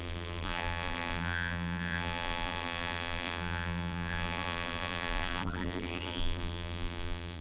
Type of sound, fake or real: fake